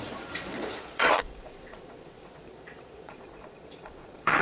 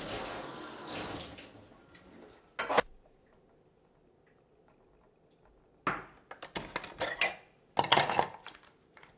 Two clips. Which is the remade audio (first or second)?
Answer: first